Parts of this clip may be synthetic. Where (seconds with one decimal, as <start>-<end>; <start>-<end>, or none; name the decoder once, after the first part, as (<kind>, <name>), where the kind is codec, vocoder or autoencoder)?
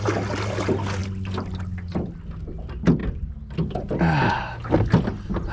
none